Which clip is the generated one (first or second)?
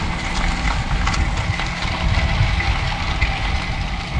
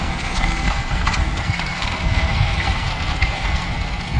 second